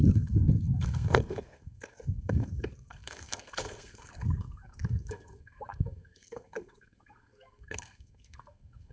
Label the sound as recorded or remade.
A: remade